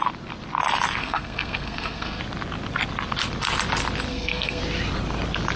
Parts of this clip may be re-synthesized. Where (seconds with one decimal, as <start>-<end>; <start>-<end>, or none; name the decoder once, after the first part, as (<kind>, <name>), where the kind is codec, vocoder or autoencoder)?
1.0-2.2 (codec, SNAC); 4.1-4.6